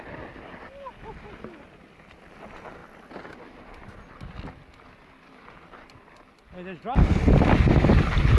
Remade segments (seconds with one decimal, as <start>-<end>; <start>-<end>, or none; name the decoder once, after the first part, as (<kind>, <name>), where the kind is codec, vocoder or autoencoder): none

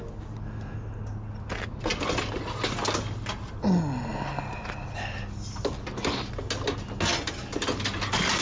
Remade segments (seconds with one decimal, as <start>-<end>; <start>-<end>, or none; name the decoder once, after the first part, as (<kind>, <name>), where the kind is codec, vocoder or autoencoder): none

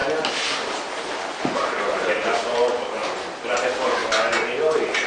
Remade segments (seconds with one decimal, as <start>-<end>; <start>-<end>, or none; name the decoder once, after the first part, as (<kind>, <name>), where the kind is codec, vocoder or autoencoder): 1.4-3.0 (vocoder, BigVGAN v2); 3.6-4.0; 4.6-5.1

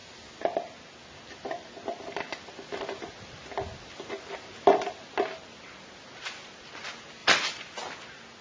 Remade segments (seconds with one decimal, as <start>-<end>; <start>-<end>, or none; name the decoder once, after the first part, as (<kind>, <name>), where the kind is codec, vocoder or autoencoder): 7.2-7.7 (vocoder, BigVGAN v2)

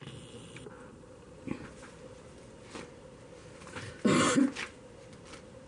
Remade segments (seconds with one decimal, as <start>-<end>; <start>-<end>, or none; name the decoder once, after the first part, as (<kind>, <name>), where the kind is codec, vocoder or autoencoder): 3.4-3.9 (vocoder, BigVGAN v2)